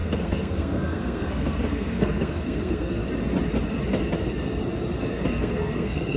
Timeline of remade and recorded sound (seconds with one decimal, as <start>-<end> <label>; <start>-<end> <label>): 0.0-3.0 remade; 3.0-5.4 recorded; 5.4-6.2 remade